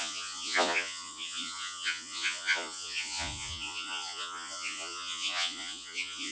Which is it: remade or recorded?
remade